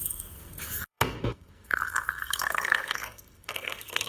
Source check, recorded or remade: remade